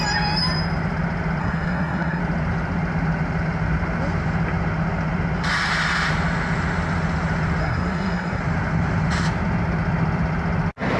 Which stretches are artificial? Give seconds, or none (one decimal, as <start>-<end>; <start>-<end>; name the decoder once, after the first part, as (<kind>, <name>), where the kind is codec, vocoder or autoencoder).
1.4-2.2 (codec, SNAC); 7.6-8.4